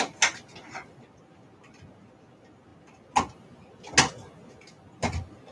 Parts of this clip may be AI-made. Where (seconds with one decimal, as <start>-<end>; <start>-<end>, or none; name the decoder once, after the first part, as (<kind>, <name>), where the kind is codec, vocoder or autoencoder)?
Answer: none